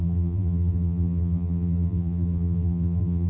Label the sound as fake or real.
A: fake